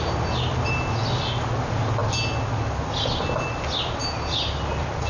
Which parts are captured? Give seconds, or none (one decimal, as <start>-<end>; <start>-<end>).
0.0-5.1